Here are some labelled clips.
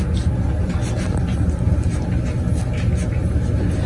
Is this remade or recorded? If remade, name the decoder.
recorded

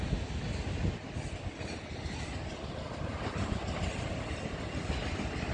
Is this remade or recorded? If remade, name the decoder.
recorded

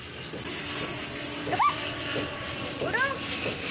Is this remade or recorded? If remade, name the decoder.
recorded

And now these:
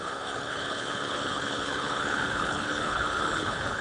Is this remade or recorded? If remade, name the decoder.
remade, codec, HILCodec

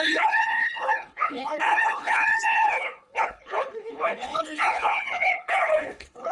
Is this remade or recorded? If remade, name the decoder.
remade, codec, HILCodec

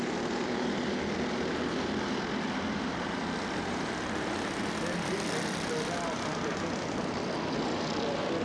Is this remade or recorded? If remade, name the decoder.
recorded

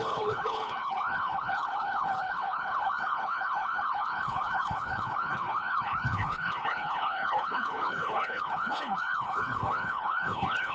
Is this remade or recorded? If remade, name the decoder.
remade, codec, HILCodec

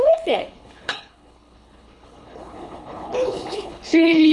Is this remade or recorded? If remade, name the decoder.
remade, codec, HILCodec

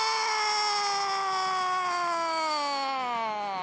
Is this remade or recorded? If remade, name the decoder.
recorded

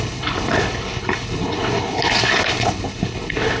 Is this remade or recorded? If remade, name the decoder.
remade, codec, HILCodec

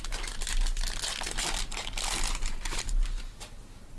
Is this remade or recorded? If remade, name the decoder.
recorded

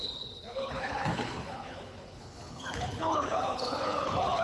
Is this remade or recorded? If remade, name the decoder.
remade, codec, HILCodec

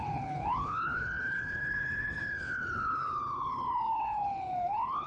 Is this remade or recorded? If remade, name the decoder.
remade, codec, HILCodec